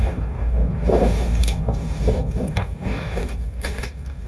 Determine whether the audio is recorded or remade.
remade